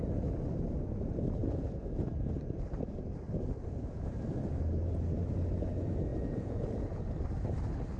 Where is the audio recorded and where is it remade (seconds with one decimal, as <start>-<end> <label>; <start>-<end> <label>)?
0.0-1.4 recorded; 1.4-1.9 remade; 1.9-6.1 recorded; 6.1-7.0 remade; 7.0-8.0 recorded